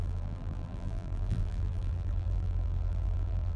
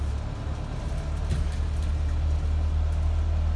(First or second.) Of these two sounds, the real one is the second